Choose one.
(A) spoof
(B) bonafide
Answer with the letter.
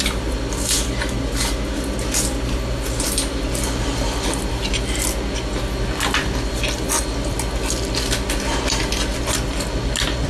B